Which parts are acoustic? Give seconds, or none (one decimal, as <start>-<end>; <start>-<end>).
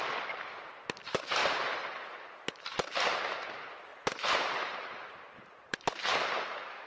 0.0-1.4; 3.2-3.9; 6.4-6.9